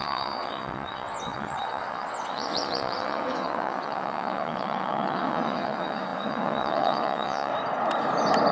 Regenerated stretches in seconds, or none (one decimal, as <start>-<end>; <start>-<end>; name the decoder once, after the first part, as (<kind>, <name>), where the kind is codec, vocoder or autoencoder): 0.0-7.5 (vocoder, WaveNeXt)